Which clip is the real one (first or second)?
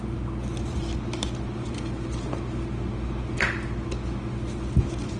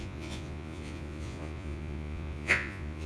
first